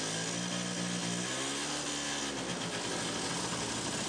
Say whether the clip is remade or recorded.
recorded